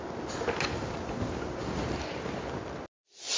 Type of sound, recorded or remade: recorded